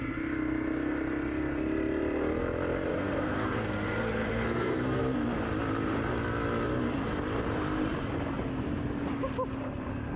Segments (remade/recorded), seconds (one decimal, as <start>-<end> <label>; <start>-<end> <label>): 0.0-2.9 recorded; 2.9-5.0 remade; 5.0-10.2 recorded